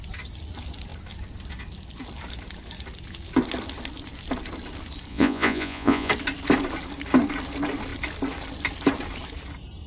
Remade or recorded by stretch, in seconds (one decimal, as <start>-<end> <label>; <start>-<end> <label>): 0.0-5.1 recorded; 5.1-6.1 remade; 6.1-9.9 recorded